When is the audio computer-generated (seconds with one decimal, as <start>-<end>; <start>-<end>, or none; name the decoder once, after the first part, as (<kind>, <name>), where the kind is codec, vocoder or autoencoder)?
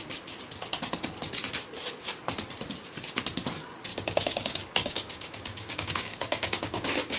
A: 3.9-7.2 (codec, DAC)